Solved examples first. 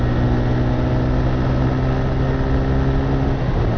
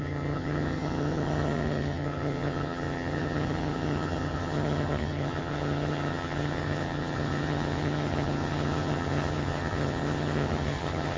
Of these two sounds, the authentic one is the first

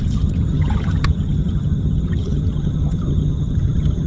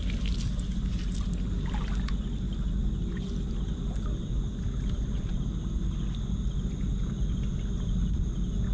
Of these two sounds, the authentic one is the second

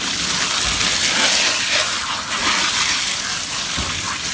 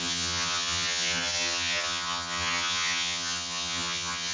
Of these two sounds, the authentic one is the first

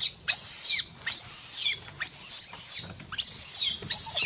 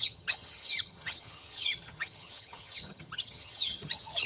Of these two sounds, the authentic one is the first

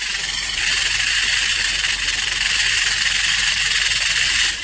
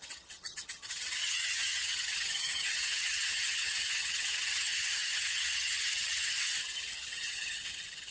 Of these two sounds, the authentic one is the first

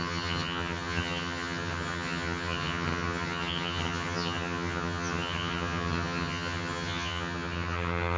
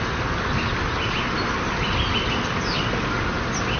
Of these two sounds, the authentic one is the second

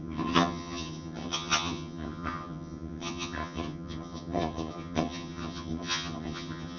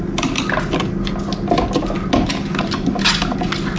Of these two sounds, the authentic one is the second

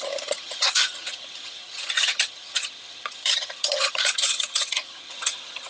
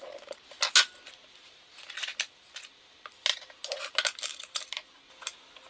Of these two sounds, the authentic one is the second